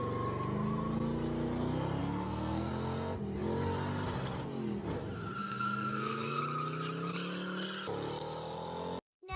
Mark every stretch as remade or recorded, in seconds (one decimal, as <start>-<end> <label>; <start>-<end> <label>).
0.0-2.0 recorded; 2.0-2.7 remade; 2.7-5.4 recorded; 5.4-6.4 remade; 6.4-9.4 recorded